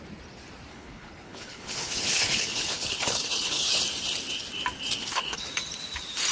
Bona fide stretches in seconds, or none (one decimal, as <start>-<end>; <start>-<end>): 0.0-0.7; 3.8-5.0; 5.5-6.3